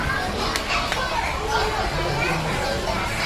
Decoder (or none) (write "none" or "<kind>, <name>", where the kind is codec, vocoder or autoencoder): none